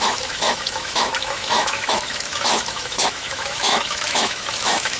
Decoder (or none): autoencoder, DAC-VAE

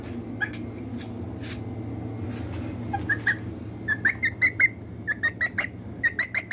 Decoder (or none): none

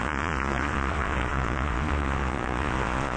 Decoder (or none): vocoder, Vocos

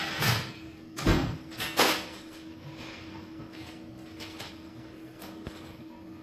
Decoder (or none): codec, SNAC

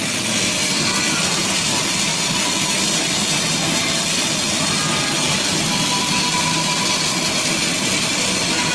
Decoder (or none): none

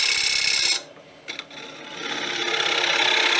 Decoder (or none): none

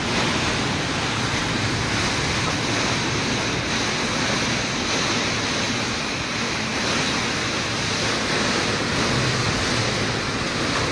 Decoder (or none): none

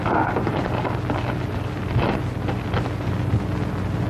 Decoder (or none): none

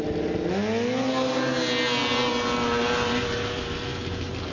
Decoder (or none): none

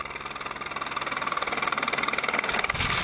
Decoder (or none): none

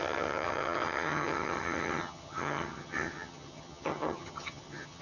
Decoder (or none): vocoder, HiFi-GAN